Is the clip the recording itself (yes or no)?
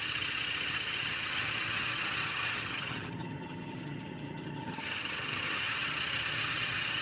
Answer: no